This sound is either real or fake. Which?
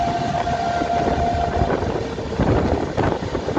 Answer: real